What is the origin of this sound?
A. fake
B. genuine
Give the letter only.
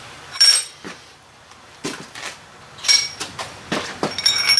A